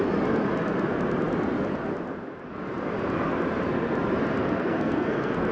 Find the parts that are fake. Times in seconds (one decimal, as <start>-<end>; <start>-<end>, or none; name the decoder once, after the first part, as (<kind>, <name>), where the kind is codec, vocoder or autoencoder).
4.4-5.5 (codec, SNAC)